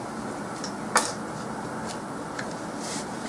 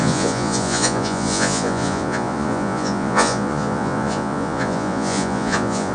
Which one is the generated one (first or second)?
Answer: second